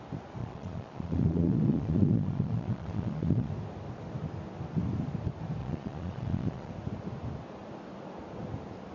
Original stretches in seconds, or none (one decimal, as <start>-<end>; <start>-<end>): 0.0-0.4; 3.5-5.6; 6.7-8.9